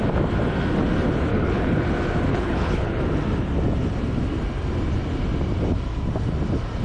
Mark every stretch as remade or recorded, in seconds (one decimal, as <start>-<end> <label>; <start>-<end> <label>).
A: 0.0-1.3 recorded; 1.3-1.9 remade; 1.9-2.3 recorded; 2.3-3.0 remade; 3.0-6.8 recorded